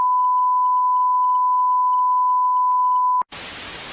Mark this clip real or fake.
real